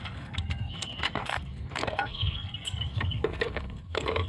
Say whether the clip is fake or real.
fake